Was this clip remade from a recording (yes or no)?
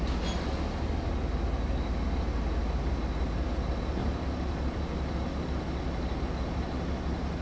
no